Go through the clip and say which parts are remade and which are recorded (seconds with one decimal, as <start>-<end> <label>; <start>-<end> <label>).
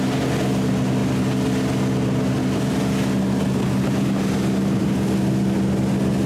0.0-6.3 recorded